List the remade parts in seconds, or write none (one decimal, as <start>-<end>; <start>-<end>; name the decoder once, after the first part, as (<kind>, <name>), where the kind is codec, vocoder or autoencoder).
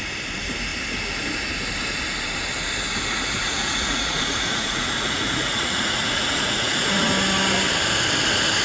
3.4-7.1 (vocoder, Vocos)